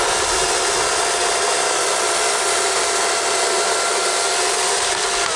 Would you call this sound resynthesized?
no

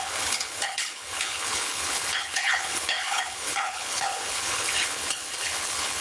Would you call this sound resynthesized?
yes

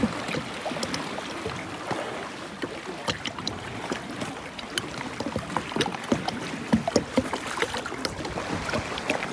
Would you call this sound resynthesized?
no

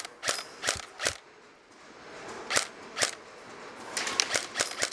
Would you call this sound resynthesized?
no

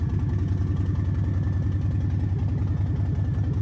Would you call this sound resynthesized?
no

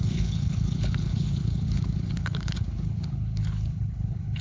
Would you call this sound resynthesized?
yes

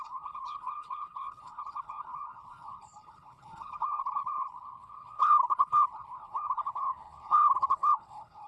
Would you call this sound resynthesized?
yes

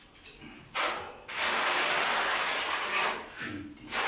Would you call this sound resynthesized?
no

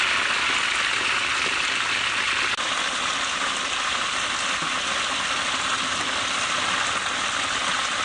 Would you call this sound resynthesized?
no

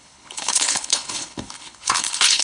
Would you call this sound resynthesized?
yes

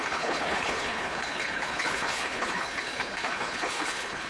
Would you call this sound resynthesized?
yes